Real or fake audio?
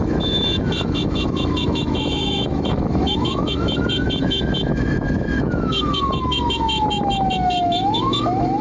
fake